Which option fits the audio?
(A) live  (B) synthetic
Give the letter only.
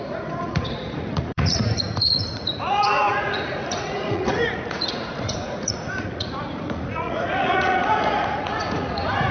B